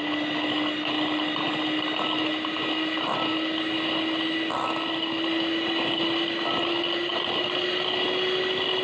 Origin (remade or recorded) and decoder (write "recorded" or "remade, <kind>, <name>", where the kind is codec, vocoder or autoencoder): recorded